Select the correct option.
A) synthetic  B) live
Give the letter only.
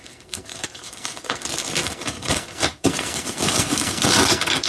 A